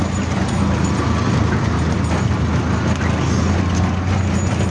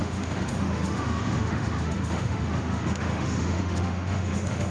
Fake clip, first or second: second